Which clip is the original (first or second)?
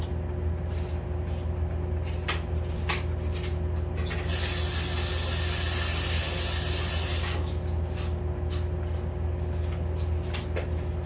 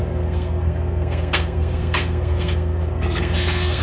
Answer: first